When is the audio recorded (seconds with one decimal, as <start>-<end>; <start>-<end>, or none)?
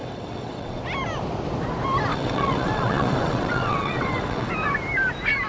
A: 0.8-2.1; 4.5-5.5